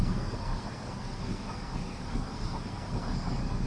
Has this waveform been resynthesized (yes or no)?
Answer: yes